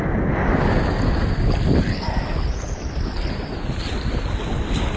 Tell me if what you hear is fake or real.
real